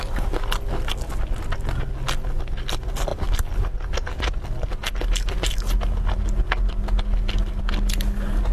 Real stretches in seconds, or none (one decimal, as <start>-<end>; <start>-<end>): 0.0-8.5